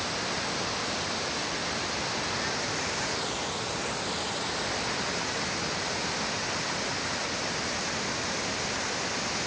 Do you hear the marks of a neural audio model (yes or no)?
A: no